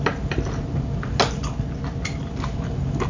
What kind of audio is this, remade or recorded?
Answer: recorded